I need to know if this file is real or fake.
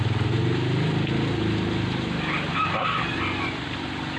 real